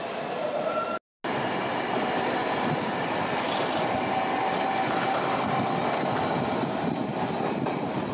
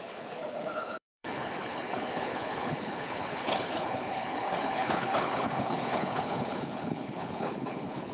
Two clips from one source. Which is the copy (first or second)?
second